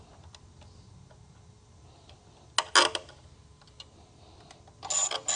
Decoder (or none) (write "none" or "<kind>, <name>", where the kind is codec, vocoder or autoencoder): none